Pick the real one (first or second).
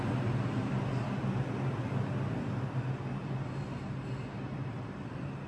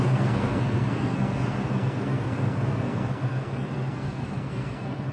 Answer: first